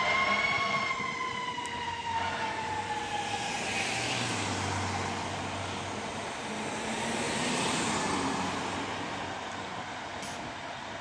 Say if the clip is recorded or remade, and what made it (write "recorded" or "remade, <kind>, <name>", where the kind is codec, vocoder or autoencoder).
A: recorded